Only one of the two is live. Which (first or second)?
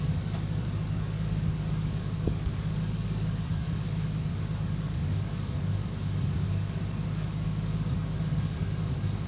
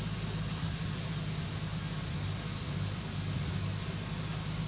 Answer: second